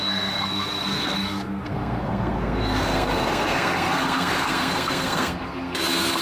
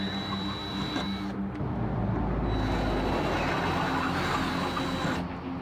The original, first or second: second